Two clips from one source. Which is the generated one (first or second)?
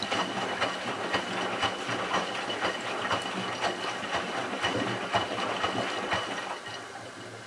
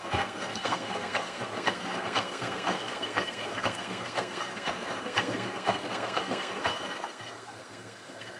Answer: second